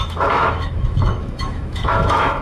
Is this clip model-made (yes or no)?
yes